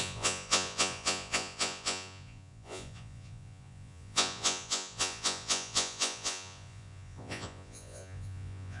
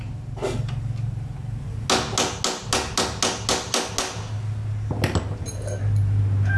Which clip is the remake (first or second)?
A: first